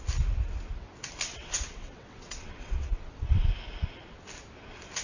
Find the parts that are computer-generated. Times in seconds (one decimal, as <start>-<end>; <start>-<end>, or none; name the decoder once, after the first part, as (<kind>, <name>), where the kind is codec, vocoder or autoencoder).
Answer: 1.3-3.5 (vocoder, WaveNeXt)